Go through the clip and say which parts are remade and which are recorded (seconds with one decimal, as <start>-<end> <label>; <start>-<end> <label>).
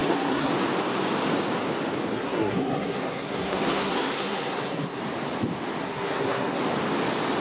0.0-0.5 remade; 0.5-2.1 recorded; 2.1-5.0 remade; 5.0-5.8 recorded; 5.8-6.6 remade; 6.6-7.4 recorded